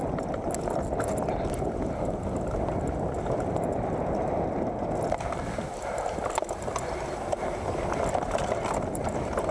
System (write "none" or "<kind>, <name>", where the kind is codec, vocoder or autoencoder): none